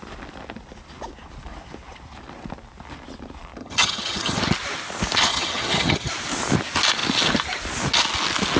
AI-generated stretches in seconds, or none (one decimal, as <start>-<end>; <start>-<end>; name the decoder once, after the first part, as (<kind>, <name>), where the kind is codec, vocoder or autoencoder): 3.6-4.4 (vocoder, HiFi-GAN); 5.3-6.1